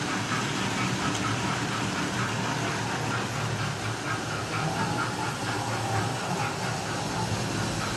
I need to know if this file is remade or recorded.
recorded